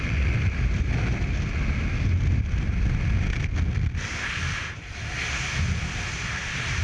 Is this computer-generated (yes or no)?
no